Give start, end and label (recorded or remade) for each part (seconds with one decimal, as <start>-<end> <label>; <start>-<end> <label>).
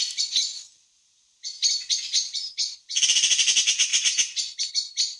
0.0-5.2 recorded